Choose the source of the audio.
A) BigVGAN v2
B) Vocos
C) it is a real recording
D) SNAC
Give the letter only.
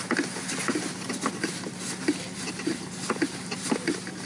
C